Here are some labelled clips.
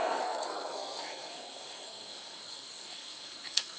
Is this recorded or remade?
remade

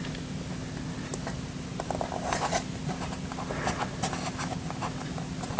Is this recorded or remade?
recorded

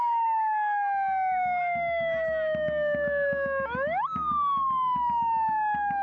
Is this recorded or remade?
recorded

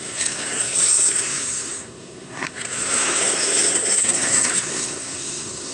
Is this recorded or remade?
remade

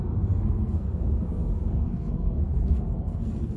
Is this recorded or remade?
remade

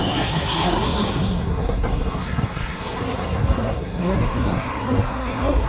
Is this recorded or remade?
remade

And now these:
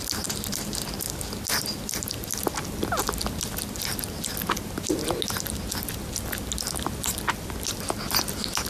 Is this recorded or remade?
recorded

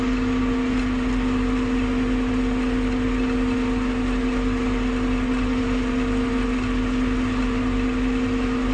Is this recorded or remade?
recorded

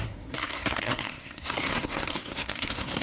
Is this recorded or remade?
remade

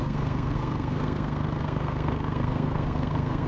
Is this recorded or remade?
remade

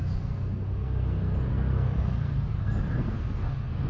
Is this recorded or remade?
remade